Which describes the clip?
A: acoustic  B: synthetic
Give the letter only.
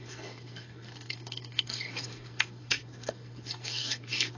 B